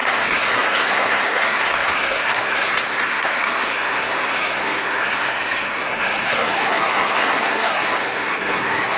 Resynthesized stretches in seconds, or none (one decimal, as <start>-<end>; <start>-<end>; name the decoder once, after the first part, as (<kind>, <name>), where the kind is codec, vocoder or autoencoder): 0.0-9.0 (codec, SNAC)